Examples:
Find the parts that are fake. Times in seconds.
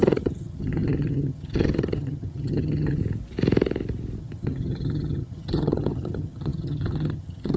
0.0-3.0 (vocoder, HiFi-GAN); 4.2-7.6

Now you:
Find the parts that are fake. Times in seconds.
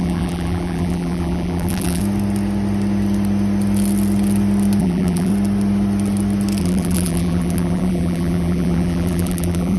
0.0-2.0 (vocoder, BigVGAN v2); 4.8-5.3; 6.6-9.8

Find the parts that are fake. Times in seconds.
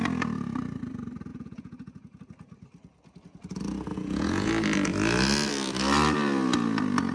1.3-2.2 (vocoder, Vocos); 3.9-4.5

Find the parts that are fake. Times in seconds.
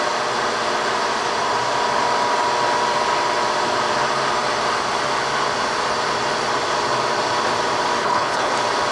8.0-8.5 (codec, HILCodec)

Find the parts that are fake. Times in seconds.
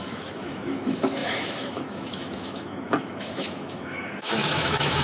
0.0-5.0 (autoencoder, DAC-VAE)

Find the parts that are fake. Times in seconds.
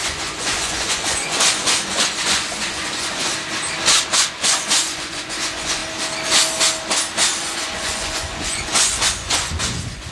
0.0-3.3 (vocoder, Vocos); 4.1-5.8; 7.4-10.1